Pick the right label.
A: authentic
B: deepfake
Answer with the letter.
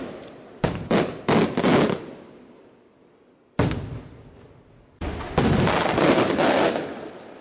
A